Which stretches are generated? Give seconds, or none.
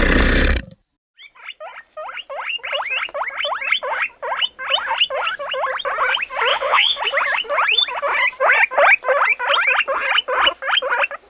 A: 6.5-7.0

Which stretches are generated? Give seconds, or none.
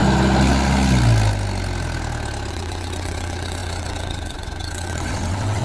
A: 2.5-5.6